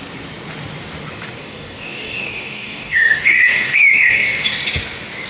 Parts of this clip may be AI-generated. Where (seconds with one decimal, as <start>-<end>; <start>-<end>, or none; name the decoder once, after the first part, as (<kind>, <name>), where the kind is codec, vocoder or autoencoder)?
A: 1.4-4.6 (codec, DAC)